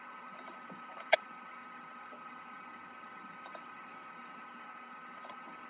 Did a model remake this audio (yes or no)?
yes